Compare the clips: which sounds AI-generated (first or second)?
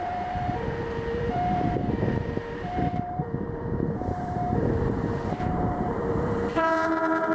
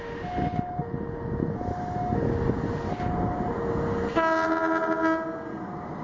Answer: first